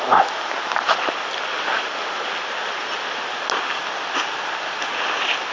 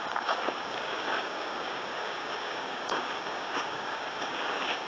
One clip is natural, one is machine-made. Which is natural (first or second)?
first